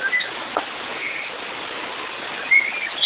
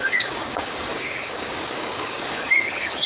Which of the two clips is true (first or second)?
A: first